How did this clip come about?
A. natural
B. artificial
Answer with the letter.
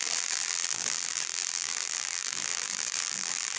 B